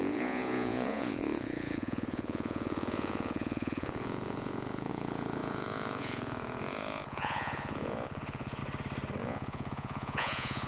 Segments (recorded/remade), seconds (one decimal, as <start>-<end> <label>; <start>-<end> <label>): 0.0-8.6 remade; 8.6-9.2 recorded; 9.2-10.7 remade

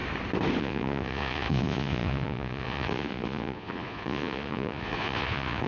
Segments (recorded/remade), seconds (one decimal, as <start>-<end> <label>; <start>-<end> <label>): 0.0-0.6 recorded; 0.6-5.7 remade

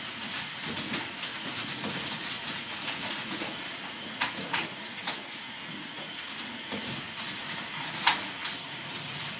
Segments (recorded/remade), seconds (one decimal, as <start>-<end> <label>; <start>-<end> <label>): 0.0-9.4 remade

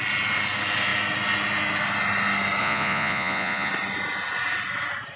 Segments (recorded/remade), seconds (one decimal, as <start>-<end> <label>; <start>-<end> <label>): 0.0-2.6 recorded; 2.6-3.7 remade; 3.7-5.2 recorded